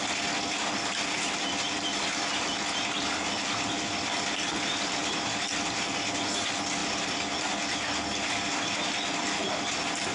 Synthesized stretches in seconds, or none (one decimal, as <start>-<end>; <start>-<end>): none